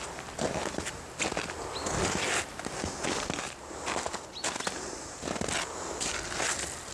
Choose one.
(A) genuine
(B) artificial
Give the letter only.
A